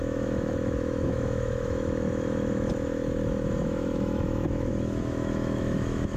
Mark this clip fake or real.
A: fake